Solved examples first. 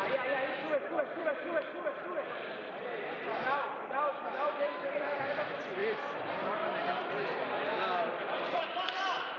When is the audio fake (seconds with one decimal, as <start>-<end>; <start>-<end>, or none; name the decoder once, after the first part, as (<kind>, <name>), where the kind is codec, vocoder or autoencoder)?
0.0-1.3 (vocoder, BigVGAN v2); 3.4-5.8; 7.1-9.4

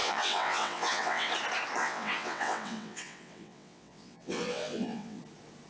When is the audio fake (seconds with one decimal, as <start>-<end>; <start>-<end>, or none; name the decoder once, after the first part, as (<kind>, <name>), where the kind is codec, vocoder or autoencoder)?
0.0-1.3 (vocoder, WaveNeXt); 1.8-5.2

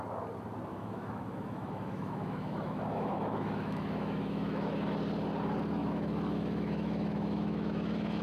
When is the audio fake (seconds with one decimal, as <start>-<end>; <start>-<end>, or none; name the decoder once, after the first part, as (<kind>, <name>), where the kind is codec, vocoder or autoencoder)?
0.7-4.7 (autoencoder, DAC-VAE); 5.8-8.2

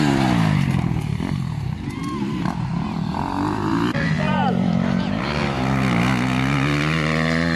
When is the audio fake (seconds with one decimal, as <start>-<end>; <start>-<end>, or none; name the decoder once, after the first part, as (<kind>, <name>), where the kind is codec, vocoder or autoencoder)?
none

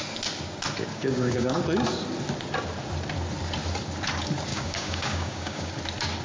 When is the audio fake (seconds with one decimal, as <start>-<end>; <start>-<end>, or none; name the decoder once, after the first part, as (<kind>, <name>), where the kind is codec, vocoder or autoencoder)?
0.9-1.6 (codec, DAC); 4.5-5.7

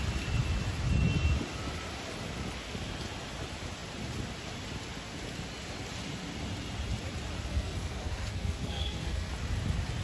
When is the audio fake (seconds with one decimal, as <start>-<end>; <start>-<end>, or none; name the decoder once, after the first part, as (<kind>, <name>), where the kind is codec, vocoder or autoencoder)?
7.5-9.3 (codec, SNAC)